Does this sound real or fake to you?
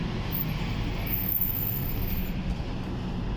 real